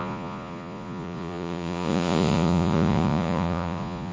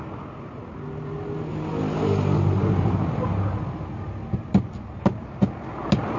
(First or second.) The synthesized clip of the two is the first